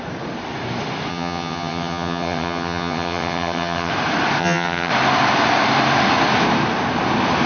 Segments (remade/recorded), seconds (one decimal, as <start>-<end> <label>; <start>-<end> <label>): 0.0-1.1 recorded; 1.1-3.9 remade; 3.9-4.4 recorded; 4.4-4.9 remade; 4.9-7.5 recorded